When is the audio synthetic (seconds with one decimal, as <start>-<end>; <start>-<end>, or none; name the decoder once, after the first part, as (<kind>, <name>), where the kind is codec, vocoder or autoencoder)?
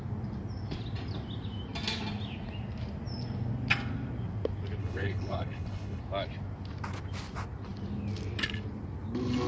4.8-6.0 (codec, HILCodec)